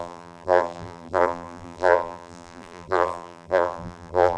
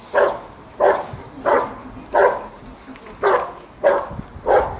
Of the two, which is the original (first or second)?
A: second